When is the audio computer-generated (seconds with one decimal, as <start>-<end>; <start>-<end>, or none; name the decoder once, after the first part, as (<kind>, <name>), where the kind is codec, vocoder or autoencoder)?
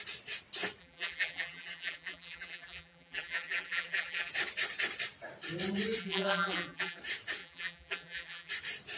0.8-4.3 (vocoder, BigVGAN v2); 6.0-7.0; 7.4-8.5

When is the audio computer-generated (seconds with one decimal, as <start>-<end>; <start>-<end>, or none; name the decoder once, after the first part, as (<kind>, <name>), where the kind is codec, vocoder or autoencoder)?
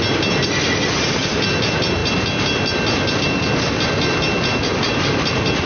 none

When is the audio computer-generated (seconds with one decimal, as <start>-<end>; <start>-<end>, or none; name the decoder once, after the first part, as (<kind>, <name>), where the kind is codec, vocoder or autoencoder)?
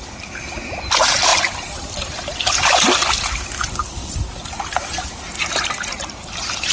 none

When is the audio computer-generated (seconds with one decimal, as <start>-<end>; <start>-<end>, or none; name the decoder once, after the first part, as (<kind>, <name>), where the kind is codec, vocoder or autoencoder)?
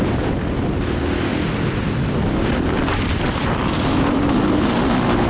1.3-4.5 (vocoder, BigVGAN v2)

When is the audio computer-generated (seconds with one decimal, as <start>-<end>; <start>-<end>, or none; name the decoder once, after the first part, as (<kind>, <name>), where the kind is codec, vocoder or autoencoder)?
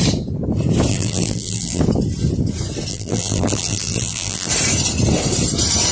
0.9-1.8 (vocoder, BigVGAN v2); 2.9-4.5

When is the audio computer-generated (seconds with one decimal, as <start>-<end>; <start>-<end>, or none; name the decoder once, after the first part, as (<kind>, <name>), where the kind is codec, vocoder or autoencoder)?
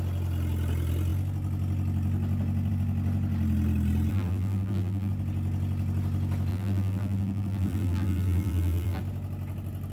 4.1-5.1 (vocoder, BigVGAN v2); 6.5-9.0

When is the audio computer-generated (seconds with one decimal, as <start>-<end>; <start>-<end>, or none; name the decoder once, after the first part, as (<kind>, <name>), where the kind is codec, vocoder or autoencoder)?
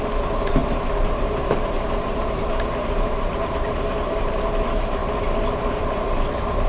0.0-5.0 (vocoder, BigVGAN v2); 5.8-6.7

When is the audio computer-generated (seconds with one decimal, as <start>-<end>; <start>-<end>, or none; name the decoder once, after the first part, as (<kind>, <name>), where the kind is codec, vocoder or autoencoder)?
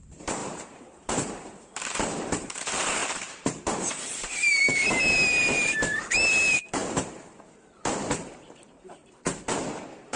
0.0-9.0 (vocoder, BigVGAN v2); 9.7-10.2